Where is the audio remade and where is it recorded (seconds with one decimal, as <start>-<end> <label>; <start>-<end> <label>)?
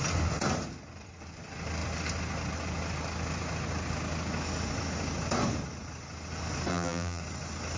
0.0-6.7 recorded; 6.7-7.2 remade; 7.2-7.8 recorded